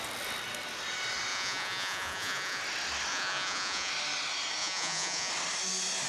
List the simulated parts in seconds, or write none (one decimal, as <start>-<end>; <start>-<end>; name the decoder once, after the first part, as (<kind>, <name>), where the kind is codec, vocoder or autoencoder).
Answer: 1.3-2.6 (vocoder, Vocos); 3.1-3.9; 4.6-5.3

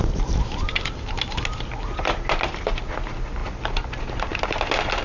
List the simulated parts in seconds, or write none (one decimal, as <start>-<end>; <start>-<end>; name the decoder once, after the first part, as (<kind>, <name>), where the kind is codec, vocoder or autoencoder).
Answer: none

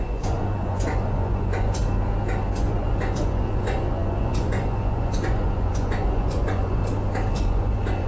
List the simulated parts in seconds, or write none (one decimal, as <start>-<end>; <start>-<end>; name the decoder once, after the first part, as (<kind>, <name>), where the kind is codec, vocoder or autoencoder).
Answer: 0.0-1.8 (vocoder, Vocos); 2.5-6.8; 7.3-8.1

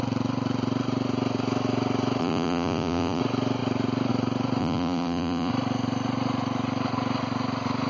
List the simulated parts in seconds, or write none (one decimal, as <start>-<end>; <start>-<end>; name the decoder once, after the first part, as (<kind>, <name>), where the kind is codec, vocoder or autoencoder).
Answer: 2.2-3.2 (vocoder, Vocos); 4.6-5.5

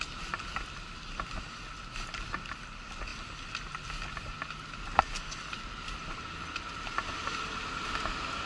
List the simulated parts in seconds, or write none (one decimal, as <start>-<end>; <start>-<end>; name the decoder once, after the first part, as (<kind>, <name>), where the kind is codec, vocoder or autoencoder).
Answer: none

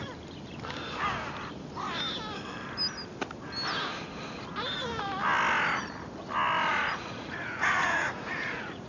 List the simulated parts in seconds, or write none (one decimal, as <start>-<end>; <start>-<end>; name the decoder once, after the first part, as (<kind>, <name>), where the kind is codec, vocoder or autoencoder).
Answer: 6.7-8.9 (vocoder, Vocos)

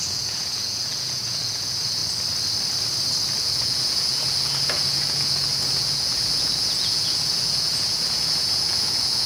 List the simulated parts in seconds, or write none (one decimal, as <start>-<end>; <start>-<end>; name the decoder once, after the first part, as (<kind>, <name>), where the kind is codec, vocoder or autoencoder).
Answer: 0.0-2.0 (vocoder, Vocos); 3.4-9.3